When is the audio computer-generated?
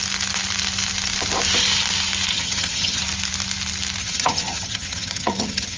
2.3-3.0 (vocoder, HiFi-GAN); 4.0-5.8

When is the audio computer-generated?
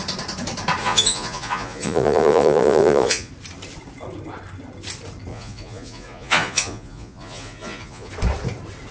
0.8-3.3 (vocoder, Vocos); 5.3-8.1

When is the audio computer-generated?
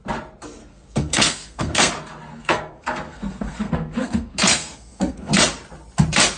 0.6-1.9 (codec, SNAC); 2.3-5.3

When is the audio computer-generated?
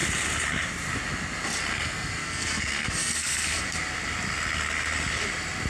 1.7-3.6 (codec, SNAC)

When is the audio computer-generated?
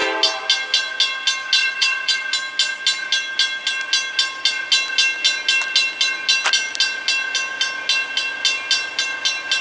1.6-2.2 (vocoder, Vocos)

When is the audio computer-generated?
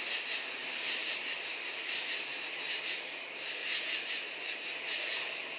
none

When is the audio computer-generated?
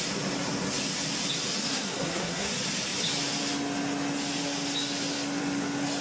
1.6-2.5 (codec, SNAC)